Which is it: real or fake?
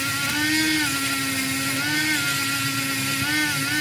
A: real